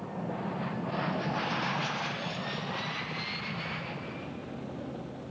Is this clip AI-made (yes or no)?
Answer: no